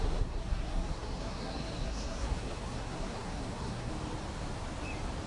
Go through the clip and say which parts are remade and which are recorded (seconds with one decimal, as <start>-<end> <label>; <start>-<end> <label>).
0.0-3.9 remade; 3.9-5.3 recorded